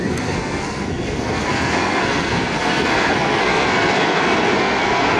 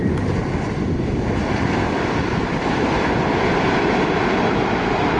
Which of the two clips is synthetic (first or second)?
first